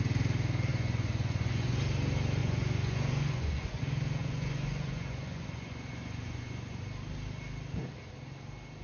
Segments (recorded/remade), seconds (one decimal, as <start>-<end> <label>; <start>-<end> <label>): 0.0-0.7 recorded; 0.7-1.8 remade; 1.8-2.4 recorded; 2.4-3.8 remade; 3.8-4.2 recorded; 4.2-6.8 remade; 6.8-8.8 recorded